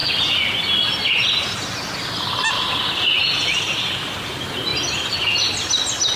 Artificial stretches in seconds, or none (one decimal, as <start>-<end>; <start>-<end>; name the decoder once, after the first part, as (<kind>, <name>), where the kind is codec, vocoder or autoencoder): none